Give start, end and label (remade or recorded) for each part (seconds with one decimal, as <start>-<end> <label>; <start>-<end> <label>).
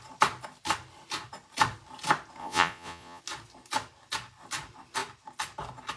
0.0-2.4 recorded; 2.4-3.2 remade; 3.2-6.0 recorded